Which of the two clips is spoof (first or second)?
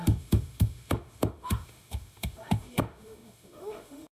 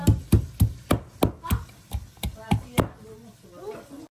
first